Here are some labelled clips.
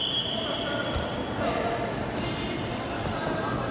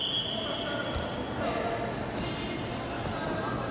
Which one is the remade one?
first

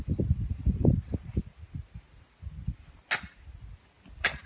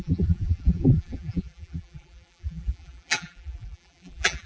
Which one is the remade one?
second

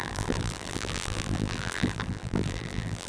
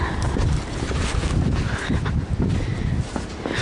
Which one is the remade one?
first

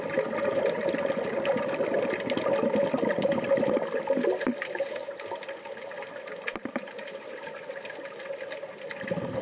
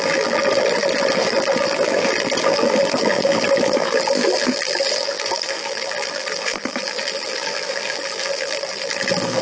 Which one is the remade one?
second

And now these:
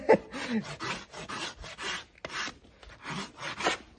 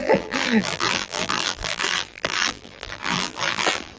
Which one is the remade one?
second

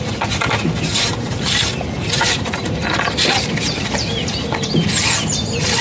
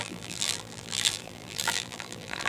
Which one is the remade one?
second